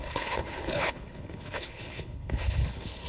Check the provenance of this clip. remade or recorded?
remade